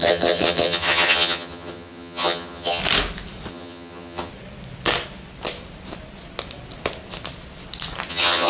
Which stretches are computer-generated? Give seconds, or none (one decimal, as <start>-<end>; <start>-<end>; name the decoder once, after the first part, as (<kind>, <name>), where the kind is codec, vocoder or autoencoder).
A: 0.0-2.8 (vocoder, HiFi-GAN); 3.5-4.3; 8.1-8.5